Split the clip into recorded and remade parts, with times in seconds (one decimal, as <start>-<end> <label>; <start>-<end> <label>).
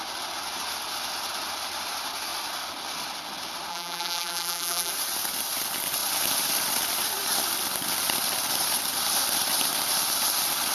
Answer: 0.0-3.7 recorded; 3.7-4.9 remade; 4.9-10.7 recorded